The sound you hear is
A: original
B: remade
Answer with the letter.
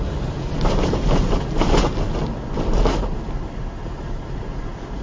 A